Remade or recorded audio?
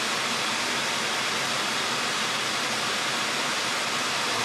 recorded